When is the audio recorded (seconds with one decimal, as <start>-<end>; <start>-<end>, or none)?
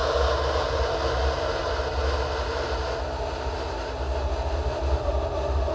0.0-5.7